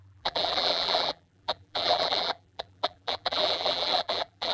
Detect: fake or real fake